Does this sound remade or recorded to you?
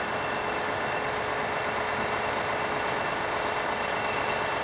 recorded